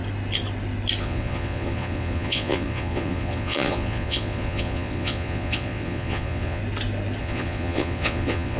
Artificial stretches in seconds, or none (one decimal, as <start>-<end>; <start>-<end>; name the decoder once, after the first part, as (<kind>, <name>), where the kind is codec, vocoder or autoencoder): 1.0-6.6 (vocoder, Vocos); 7.2-8.6